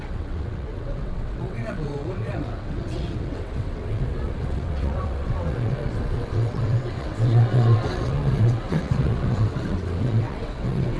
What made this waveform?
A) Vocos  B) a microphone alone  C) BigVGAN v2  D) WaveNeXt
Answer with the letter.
D